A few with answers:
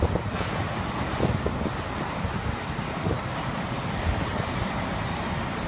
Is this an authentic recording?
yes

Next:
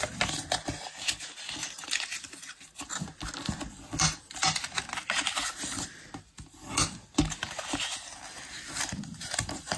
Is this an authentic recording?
yes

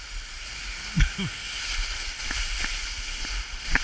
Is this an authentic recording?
yes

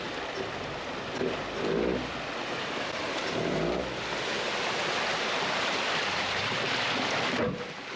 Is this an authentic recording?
yes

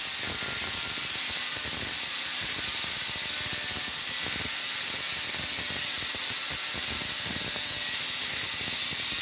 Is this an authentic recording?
yes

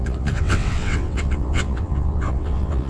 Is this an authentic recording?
no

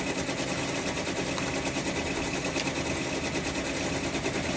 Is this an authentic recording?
yes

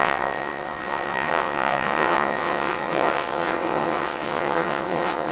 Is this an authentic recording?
no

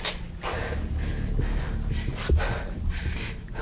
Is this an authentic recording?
yes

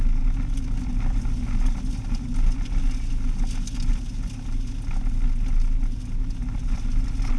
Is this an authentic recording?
yes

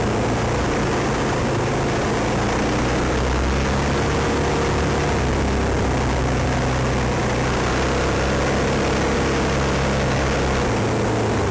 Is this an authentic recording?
yes